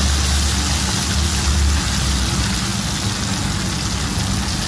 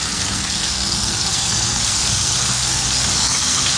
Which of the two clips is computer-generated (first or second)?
second